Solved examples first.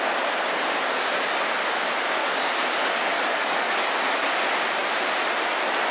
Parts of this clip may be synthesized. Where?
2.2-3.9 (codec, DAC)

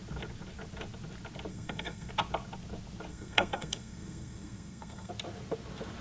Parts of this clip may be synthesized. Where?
1.5-2.1 (codec, SNAC); 3.1-5.1

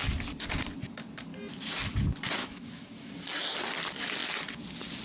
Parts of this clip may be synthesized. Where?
2.4-3.1 (autoencoder, DAC-VAE)

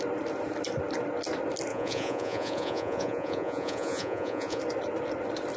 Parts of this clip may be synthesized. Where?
1.7-4.6 (vocoder, Vocos)

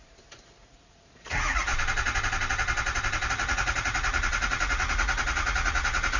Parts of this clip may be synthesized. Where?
0.0-1.7 (vocoder, Vocos); 3.3-6.2

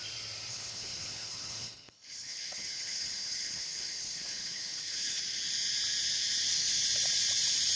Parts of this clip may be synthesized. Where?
0.5-5.2 (codec, HILCodec)

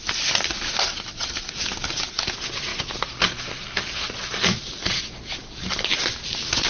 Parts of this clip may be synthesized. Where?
none

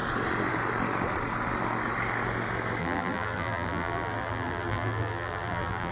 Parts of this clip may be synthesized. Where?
2.8-5.9 (vocoder, BigVGAN v2)